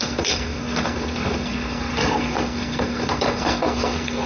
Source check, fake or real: fake